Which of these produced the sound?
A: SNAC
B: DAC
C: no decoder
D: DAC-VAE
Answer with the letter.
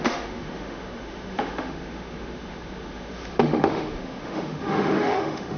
D